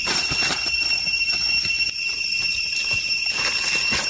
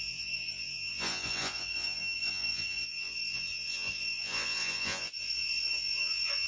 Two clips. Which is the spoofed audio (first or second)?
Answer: second